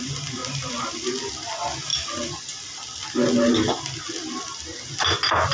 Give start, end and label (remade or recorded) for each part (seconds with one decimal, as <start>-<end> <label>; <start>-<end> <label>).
0.0-5.5 recorded